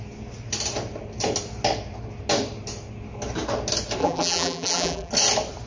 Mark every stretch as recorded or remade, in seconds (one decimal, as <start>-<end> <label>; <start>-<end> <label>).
0.0-4.0 recorded; 4.0-5.1 remade; 5.1-5.7 recorded

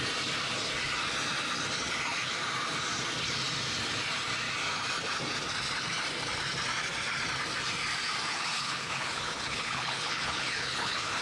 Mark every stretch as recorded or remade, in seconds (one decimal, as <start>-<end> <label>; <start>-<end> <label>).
0.0-8.3 recorded; 8.3-11.2 remade

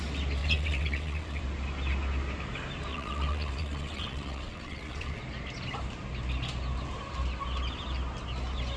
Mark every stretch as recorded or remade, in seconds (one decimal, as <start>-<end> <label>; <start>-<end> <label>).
0.0-0.4 recorded; 0.4-1.4 remade; 1.4-2.9 recorded; 2.9-5.2 remade; 5.2-8.8 recorded

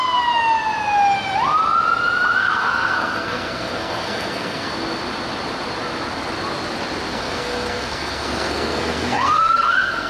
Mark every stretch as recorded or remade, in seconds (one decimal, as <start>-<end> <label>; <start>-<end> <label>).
0.0-2.4 recorded; 2.4-4.7 remade; 4.7-7.1 recorded; 7.1-10.1 remade

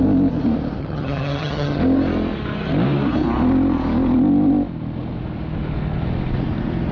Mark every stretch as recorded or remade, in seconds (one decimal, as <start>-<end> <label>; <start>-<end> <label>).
0.0-0.8 recorded; 0.8-1.8 remade; 1.8-6.9 recorded

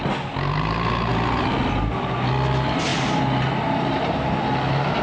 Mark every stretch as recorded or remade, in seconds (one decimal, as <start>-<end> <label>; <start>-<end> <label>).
0.0-5.0 recorded

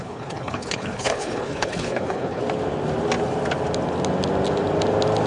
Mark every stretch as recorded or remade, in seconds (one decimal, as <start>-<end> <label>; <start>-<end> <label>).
0.0-2.4 remade; 2.4-5.3 recorded

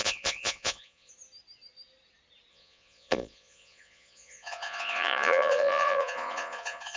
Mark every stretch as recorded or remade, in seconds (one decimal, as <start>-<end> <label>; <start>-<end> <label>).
0.0-1.1 remade; 1.1-2.5 recorded; 2.5-7.0 remade